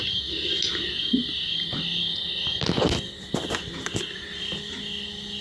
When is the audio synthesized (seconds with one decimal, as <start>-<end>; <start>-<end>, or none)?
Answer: none